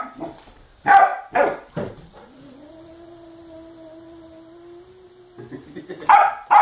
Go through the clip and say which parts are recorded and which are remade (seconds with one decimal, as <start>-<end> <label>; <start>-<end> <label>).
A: 0.0-6.6 recorded